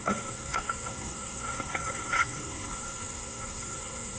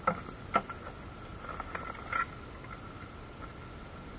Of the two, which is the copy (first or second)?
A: first